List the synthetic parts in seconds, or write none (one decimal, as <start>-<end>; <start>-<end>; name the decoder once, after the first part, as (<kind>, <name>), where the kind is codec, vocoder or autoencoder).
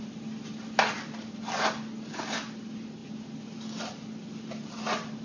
none